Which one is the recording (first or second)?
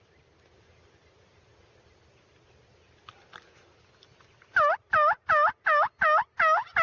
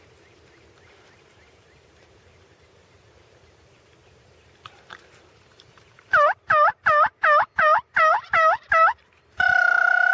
first